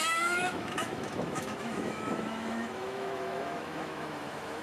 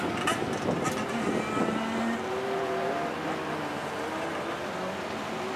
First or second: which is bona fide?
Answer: second